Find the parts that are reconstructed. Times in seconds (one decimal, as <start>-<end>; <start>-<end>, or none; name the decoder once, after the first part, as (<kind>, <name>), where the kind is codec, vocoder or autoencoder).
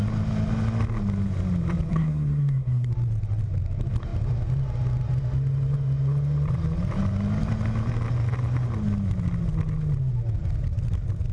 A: 1.9-2.9 (codec, SNAC)